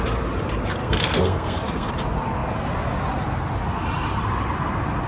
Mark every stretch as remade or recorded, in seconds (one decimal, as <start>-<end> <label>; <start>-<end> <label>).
0.0-0.8 recorded; 0.8-1.9 remade; 1.9-5.1 recorded